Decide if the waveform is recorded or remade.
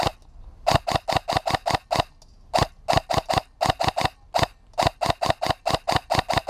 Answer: recorded